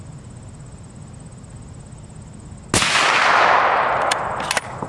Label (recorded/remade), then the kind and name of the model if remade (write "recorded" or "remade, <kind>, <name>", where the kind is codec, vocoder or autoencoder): recorded